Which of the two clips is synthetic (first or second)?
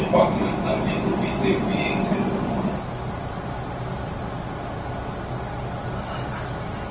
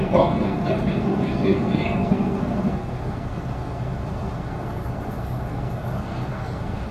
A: second